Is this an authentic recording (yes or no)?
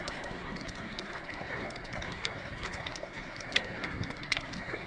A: no